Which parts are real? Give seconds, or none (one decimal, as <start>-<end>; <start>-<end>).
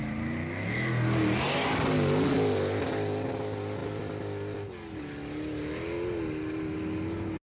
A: 0.0-7.4